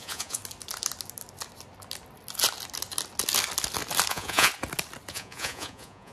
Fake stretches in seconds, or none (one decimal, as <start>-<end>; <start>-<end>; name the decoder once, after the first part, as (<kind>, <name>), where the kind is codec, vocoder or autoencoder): 0.0-0.4 (vocoder, Vocos); 4.1-4.5; 5.1-6.1